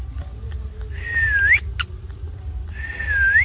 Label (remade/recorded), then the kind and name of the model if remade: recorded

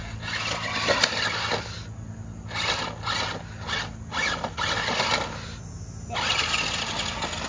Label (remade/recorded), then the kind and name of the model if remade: recorded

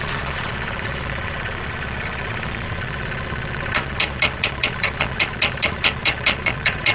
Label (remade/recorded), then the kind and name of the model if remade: remade, vocoder, Vocos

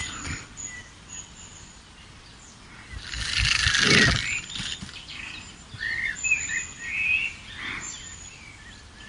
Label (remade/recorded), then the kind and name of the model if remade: recorded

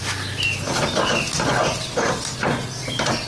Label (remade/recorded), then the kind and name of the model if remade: recorded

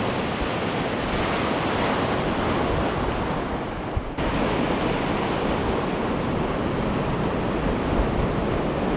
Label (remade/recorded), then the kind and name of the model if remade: recorded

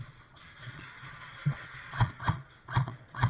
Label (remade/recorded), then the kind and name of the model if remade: remade, vocoder, Vocos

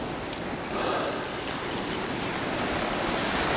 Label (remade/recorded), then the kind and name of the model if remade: recorded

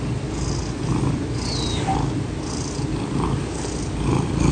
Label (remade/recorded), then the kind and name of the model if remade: recorded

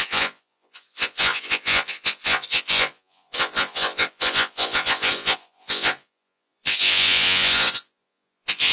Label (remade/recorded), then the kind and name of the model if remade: remade, vocoder, Vocos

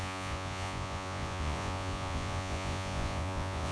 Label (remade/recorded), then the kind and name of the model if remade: remade, vocoder, Vocos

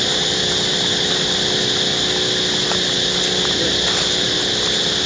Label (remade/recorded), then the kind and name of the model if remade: recorded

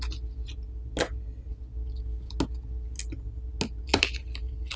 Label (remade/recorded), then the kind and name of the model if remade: recorded